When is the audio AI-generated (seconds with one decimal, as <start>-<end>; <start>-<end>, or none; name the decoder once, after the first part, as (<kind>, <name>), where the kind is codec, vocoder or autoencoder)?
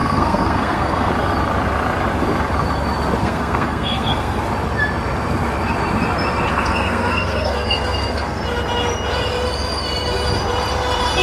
0.0-1.1 (codec, SNAC); 3.2-4.4; 6.5-8.4